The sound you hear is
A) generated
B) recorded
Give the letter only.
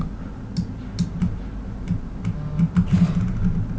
B